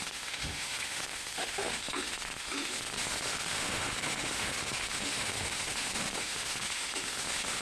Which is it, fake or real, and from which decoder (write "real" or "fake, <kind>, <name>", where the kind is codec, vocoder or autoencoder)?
fake, autoencoder, DAC-VAE